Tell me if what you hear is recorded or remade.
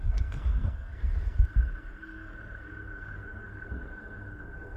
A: remade